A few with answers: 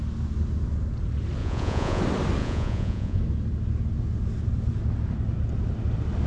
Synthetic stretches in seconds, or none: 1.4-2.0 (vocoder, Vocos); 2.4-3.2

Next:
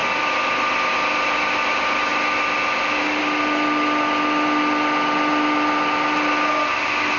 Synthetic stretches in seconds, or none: none

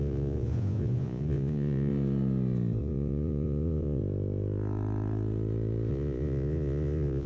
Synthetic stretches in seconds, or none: 0.0-1.9 (vocoder, Vocos); 2.8-4.0; 5.9-7.3

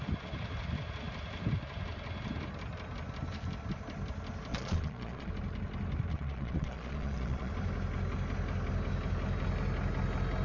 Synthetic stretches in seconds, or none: 4.5-5.3 (vocoder, Vocos); 6.1-7.5

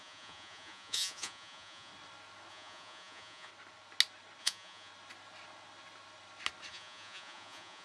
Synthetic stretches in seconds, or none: 0.0-1.9 (vocoder, Vocos); 2.5-3.5; 4.4-4.9; 6.7-7.8

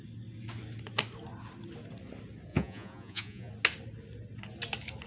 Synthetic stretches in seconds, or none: 2.5-3.5 (vocoder, Vocos)

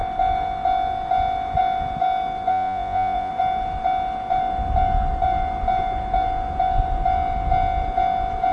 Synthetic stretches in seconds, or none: 2.5-3.3 (vocoder, Vocos)